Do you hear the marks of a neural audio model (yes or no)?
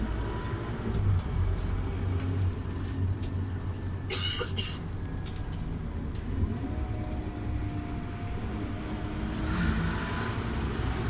no